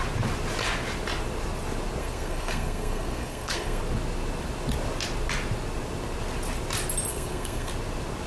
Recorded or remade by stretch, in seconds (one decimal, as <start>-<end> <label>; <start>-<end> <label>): 0.0-2.0 recorded; 2.0-3.8 remade; 3.8-7.1 recorded; 7.1-7.7 remade; 7.7-8.3 recorded